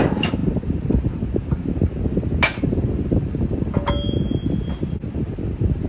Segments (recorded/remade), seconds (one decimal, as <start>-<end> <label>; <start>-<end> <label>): 0.0-5.9 recorded